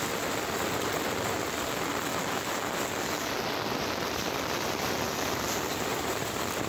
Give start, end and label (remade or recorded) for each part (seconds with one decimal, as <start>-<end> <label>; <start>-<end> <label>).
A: 0.0-5.9 recorded; 5.9-6.7 remade